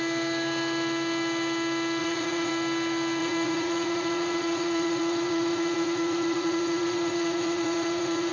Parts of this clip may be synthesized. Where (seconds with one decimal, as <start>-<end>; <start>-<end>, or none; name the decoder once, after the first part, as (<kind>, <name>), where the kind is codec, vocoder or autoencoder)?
2.0-2.5 (vocoder, Vocos); 3.2-8.3

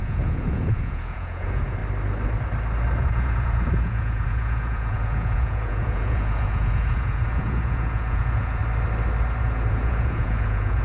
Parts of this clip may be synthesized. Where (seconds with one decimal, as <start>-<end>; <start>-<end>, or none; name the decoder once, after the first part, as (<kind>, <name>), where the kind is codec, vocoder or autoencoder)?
0.0-1.8 (vocoder, Vocos); 3.0-8.6; 9.4-10.8

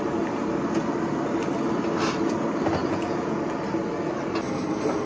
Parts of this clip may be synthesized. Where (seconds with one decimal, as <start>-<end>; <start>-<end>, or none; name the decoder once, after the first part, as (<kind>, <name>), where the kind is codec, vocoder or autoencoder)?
2.8-3.4 (vocoder, Vocos)

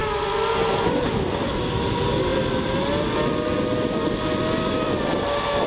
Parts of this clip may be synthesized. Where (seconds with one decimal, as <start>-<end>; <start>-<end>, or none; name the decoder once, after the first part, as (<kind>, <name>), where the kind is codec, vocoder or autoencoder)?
none

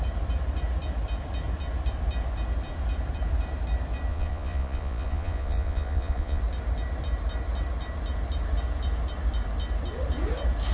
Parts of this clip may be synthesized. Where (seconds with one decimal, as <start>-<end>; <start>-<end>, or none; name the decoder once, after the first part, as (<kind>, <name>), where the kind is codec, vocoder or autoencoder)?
4.1-6.4 (vocoder, Vocos)

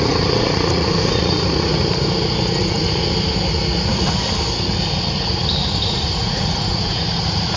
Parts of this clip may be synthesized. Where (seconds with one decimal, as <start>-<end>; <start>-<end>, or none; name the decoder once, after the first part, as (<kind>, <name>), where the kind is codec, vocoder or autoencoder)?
0.0-1.7 (vocoder, Vocos); 2.6-3.0; 5.8-7.6

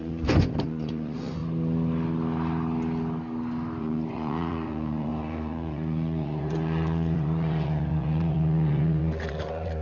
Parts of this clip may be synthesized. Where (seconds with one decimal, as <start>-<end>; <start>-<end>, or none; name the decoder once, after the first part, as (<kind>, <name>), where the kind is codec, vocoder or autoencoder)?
0.0-1.4 (vocoder, Vocos); 3.8-9.8

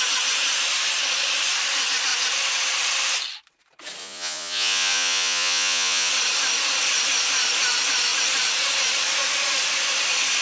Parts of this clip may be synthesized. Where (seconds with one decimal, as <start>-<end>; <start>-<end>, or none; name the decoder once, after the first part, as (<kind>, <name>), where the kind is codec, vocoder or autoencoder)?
4.0-6.1 (vocoder, Vocos)